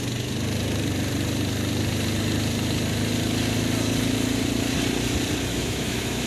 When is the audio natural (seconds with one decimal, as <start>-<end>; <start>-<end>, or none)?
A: 0.0-5.5